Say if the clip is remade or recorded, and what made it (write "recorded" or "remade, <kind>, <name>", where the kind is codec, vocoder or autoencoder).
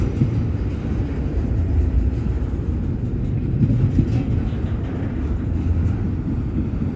recorded